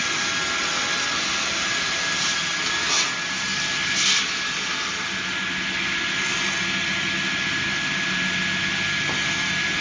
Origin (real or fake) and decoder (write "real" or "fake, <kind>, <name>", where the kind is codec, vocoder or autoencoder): real